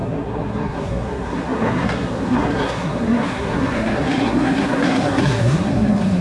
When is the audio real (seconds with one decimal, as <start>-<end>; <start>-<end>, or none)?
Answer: none

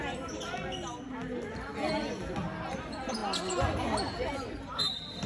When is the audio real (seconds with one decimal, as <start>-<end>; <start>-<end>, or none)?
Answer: 0.0-2.7; 3.2-4.8